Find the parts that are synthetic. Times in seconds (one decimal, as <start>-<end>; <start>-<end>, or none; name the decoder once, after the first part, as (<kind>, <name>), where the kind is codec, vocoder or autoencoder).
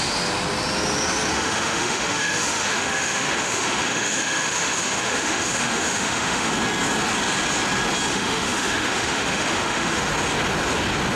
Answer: 1.3-6.5 (autoencoder, DAC-VAE); 8.1-10.1